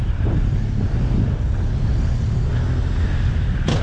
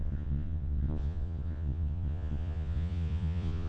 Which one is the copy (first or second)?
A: second